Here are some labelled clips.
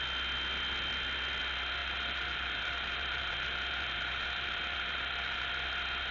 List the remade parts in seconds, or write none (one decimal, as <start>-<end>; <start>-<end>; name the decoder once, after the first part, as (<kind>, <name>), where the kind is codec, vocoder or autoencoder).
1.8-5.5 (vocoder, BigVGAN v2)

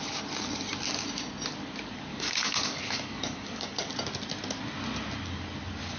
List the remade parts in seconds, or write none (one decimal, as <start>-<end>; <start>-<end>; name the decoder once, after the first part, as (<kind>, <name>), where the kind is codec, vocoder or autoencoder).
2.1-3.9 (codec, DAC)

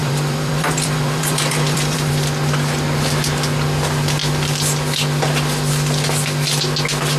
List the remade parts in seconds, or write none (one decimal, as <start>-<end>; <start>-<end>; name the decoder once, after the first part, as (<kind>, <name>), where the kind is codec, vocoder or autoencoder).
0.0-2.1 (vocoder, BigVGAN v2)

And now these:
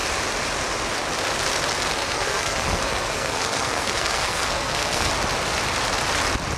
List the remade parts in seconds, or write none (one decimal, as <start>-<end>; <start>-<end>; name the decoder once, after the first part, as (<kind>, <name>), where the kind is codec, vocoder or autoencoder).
2.0-5.1 (codec, SNAC)